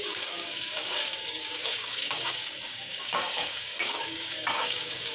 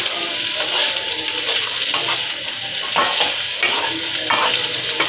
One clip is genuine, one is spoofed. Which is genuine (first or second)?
second